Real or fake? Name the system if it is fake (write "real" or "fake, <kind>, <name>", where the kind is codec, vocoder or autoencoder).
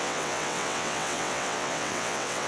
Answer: fake, vocoder, WaveNeXt